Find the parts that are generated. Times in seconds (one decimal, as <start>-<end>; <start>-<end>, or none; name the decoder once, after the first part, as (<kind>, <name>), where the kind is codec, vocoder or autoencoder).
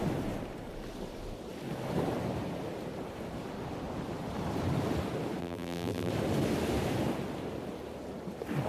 5.4-6.1 (vocoder, BigVGAN v2)